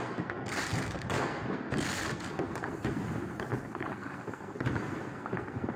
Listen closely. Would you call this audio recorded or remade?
remade